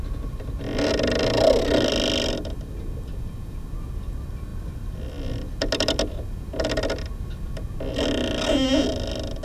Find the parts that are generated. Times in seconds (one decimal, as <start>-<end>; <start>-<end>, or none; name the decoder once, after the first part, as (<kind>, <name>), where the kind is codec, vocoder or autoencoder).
none